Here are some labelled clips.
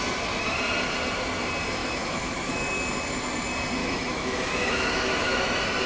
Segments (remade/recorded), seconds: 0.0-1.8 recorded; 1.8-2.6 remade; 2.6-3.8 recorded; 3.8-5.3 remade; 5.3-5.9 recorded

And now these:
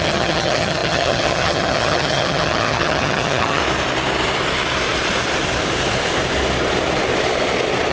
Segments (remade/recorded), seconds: 0.0-3.6 remade; 3.6-7.9 recorded

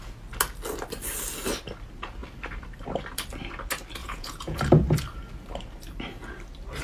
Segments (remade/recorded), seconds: 0.0-4.0 recorded; 4.0-4.6 remade; 4.6-6.8 recorded